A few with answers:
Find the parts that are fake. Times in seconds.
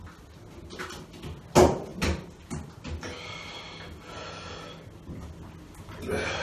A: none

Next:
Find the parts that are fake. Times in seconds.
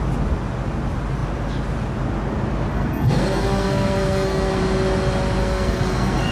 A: 2.7-4.6 (codec, SNAC); 5.4-6.3